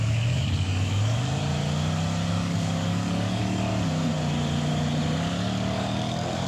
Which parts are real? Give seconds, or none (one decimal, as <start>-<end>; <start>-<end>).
1.4-2.3; 3.7-5.2